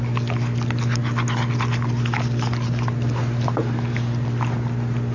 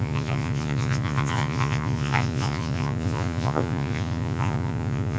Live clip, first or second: first